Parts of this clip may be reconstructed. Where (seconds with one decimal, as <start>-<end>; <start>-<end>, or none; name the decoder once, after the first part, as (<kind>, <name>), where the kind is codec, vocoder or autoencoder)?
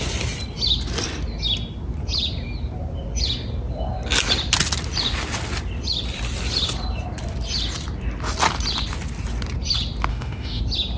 10.1-10.6 (autoencoder, DAC-VAE)